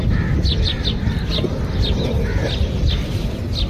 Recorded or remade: remade